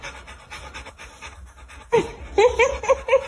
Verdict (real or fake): real